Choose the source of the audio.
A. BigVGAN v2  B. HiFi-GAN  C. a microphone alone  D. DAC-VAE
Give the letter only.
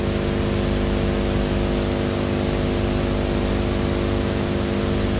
C